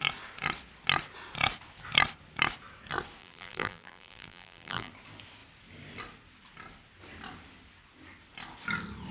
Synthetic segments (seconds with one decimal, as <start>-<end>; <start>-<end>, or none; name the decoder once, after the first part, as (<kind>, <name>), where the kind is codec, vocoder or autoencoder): 3.2-4.9 (vocoder, BigVGAN v2)